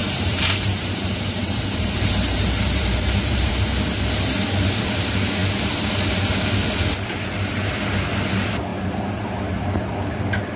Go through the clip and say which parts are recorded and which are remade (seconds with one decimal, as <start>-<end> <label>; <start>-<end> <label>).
0.0-3.5 remade; 3.5-8.7 recorded; 8.7-9.6 remade; 9.6-10.6 recorded

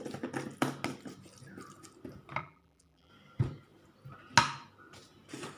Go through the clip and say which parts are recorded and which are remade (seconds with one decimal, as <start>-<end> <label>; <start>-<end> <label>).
0.0-2.4 recorded; 2.4-3.1 remade; 3.1-5.6 recorded

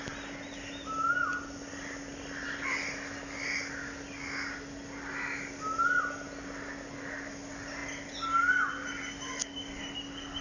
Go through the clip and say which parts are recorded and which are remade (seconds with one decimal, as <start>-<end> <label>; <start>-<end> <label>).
0.0-10.4 recorded

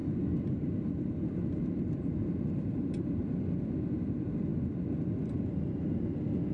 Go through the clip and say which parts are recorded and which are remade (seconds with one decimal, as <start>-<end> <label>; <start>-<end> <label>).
0.0-1.2 recorded; 1.2-3.2 remade; 3.2-3.9 recorded; 3.9-4.5 remade; 4.5-6.5 recorded

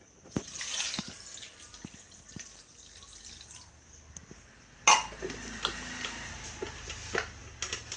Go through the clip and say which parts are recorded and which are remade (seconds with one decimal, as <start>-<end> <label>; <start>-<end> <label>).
0.0-8.0 recorded

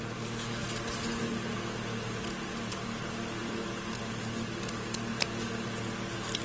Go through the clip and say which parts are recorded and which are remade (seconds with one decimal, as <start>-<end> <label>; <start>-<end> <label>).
0.0-3.4 recorded; 3.4-4.0 remade; 4.0-6.4 recorded